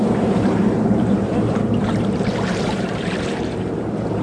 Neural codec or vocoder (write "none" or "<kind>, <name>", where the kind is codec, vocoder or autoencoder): vocoder, BigVGAN v2